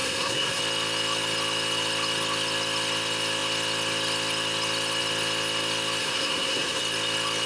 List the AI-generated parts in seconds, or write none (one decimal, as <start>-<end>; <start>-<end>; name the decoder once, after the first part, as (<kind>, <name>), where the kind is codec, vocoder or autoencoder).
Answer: 0.0-0.6 (codec, SNAC); 6.0-6.8